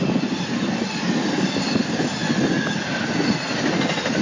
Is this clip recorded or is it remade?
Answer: recorded